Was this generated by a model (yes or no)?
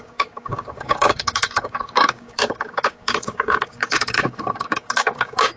yes